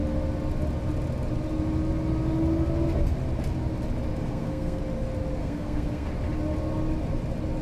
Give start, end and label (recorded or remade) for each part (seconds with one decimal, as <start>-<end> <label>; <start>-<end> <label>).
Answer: 0.0-4.2 recorded; 4.2-4.8 remade; 4.8-5.4 recorded; 5.4-6.1 remade; 6.1-7.6 recorded